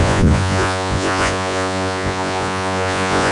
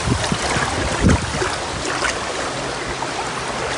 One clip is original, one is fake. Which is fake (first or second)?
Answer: first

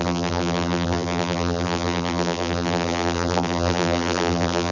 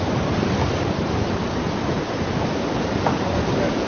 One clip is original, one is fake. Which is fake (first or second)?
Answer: first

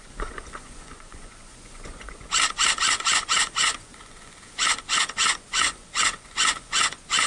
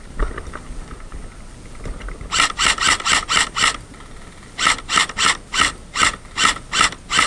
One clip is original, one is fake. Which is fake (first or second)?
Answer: first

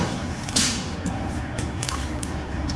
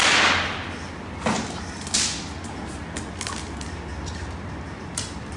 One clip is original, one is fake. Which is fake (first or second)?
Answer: first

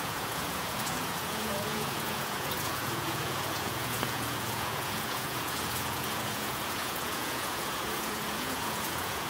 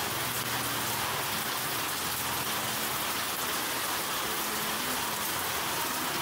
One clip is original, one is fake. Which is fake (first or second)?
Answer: first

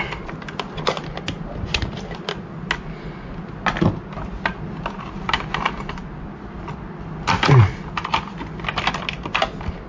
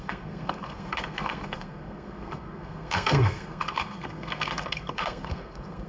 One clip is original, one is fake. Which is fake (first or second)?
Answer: second